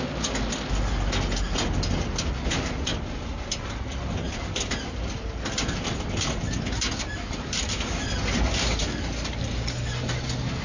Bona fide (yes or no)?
yes